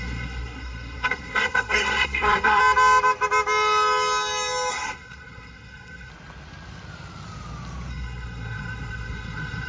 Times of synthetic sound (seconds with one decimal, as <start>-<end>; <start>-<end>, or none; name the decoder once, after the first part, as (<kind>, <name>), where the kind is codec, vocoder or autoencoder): 0.0-2.6 (codec, SNAC); 4.7-6.1; 7.9-9.7